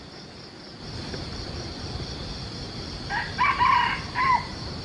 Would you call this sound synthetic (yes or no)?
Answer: no